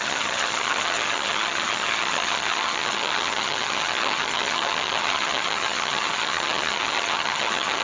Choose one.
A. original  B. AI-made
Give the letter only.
B